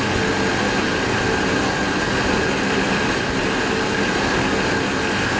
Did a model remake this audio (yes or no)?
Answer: no